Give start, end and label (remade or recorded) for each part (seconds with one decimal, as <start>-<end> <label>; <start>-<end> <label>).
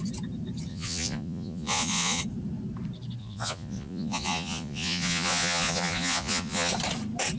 0.0-0.7 recorded; 0.7-2.2 remade; 2.2-3.2 recorded; 3.2-6.7 remade; 6.7-7.4 recorded